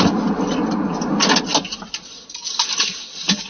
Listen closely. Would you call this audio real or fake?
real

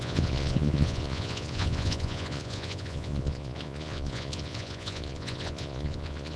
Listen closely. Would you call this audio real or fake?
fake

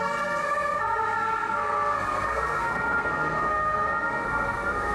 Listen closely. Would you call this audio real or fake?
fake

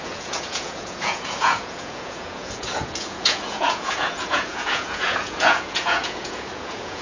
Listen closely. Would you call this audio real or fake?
fake